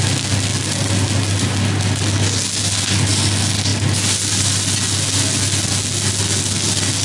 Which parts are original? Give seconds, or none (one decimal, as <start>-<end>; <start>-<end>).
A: 0.0-7.0